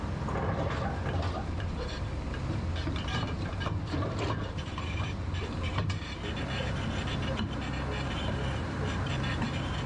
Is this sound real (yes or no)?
no